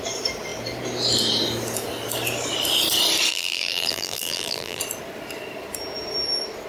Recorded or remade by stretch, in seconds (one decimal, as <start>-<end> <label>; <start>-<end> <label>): 0.0-3.3 recorded; 3.3-4.8 remade; 4.8-6.7 recorded

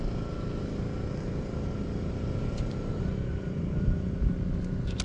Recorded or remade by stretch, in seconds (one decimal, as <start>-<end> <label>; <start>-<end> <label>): 0.0-1.2 recorded; 1.2-4.2 remade; 4.2-5.0 recorded

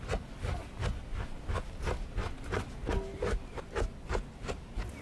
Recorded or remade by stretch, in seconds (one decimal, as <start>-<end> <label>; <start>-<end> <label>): 0.0-0.6 recorded; 0.6-1.6 remade; 1.6-3.1 recorded; 3.1-3.7 remade; 3.7-5.0 recorded

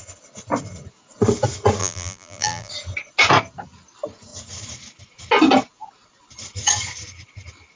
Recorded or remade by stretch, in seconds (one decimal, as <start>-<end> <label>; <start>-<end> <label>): 0.0-1.8 recorded; 1.8-2.7 remade; 2.7-7.8 recorded

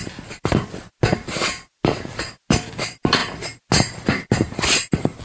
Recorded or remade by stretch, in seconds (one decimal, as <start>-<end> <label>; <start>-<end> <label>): 0.0-5.2 recorded

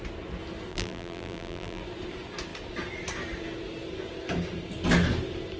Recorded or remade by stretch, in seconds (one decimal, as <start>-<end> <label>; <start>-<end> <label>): 0.0-0.7 recorded; 0.7-1.8 remade; 1.8-5.6 recorded